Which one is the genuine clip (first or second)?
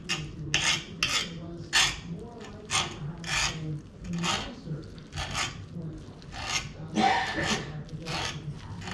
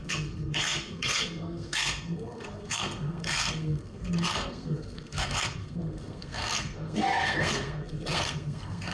first